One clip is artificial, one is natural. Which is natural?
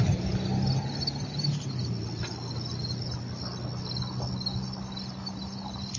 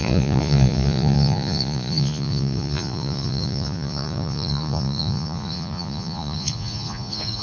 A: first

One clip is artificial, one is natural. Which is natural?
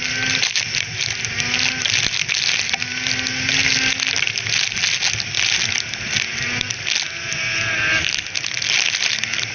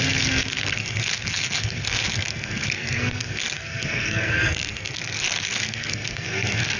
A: first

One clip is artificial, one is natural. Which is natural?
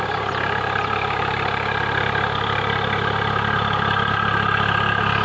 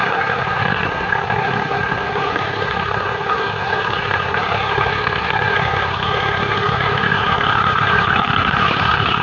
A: first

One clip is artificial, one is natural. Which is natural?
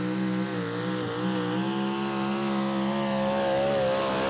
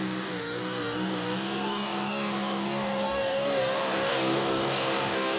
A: first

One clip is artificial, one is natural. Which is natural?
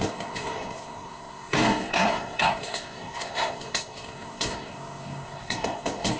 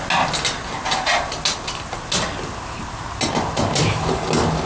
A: second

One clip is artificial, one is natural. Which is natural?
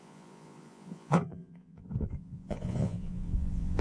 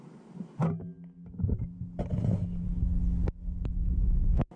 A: second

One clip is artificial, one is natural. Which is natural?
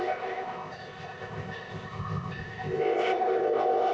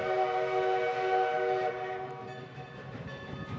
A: second